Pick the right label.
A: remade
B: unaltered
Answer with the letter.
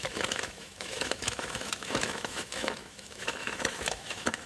A